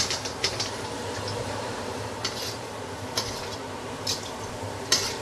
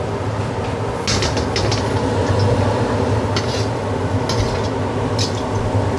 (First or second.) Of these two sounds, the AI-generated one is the first